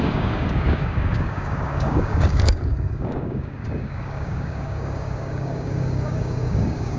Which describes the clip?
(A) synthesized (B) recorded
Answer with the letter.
A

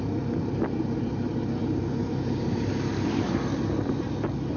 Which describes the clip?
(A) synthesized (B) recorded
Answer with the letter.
B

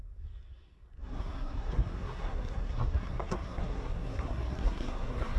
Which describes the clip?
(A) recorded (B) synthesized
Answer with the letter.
B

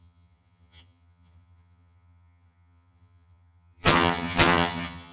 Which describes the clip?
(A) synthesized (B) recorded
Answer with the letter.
A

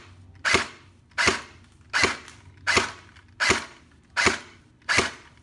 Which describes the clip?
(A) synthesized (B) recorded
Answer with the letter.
B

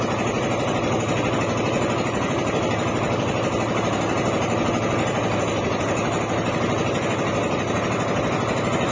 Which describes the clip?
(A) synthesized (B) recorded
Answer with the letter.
B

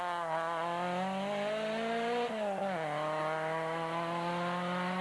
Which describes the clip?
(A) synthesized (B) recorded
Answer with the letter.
B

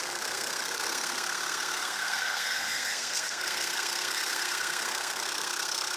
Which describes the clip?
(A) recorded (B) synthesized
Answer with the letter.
B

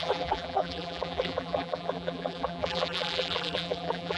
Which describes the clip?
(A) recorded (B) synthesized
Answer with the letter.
B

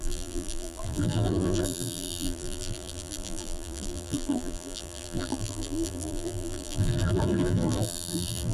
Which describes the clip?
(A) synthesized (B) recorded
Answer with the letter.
A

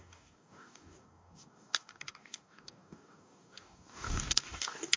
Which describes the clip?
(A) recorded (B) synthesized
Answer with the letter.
B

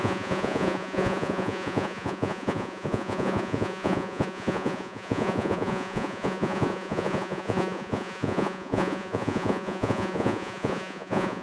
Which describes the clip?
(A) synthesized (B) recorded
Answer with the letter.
A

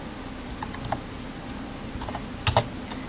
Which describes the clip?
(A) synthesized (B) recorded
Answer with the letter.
B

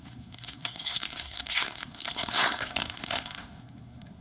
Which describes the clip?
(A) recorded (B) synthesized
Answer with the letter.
B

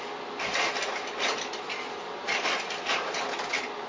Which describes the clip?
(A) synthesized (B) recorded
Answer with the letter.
B